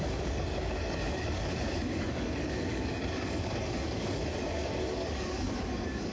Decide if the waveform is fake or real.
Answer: fake